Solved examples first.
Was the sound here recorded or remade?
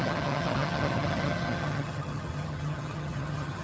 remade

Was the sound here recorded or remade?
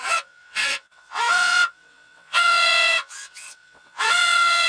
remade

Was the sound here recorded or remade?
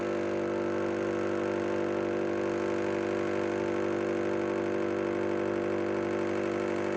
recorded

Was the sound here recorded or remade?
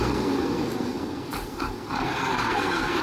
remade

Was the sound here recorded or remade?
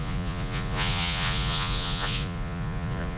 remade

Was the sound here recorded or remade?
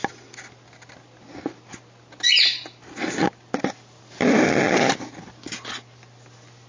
recorded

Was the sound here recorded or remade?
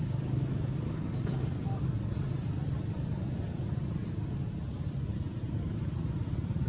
recorded